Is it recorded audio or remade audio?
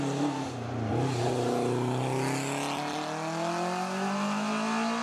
recorded